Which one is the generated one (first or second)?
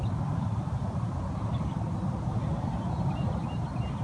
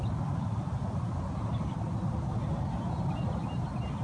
first